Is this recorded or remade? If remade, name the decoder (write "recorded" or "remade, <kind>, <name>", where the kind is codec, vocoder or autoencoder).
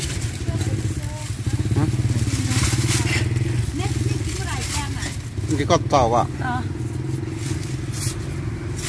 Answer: recorded